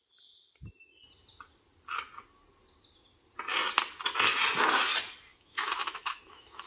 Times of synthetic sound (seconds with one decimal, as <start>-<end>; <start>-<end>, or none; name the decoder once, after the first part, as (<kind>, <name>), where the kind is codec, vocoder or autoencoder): 5.3-6.7 (autoencoder, DAC-VAE)